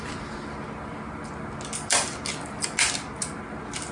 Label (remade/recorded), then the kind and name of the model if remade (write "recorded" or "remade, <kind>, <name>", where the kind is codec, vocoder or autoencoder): recorded